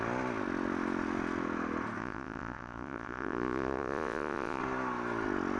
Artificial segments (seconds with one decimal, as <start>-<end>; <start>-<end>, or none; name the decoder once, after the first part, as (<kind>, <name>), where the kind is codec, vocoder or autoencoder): 2.0-4.6 (vocoder, Vocos)